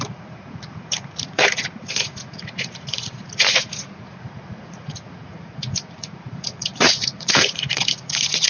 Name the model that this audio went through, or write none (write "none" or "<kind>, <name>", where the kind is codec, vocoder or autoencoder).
vocoder, Vocos